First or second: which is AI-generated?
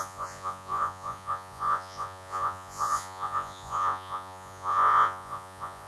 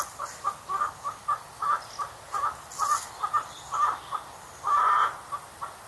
first